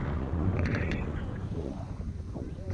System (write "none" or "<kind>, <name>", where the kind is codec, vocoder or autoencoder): vocoder, Vocos